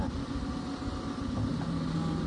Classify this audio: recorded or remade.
recorded